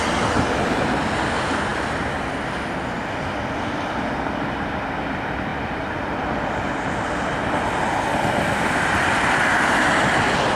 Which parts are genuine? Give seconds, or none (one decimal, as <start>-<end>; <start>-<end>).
0.0-10.6

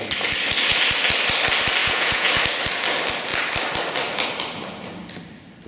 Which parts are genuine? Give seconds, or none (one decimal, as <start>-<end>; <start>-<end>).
0.0-1.8; 2.3-5.7